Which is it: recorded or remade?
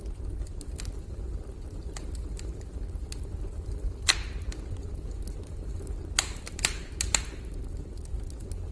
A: recorded